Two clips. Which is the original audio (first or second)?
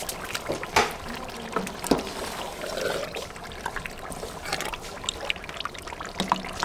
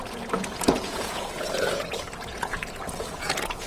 first